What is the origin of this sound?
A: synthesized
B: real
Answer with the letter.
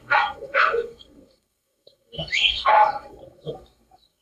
A